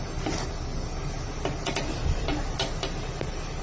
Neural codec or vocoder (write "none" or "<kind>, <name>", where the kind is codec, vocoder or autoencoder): none